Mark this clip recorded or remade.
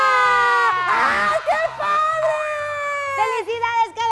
recorded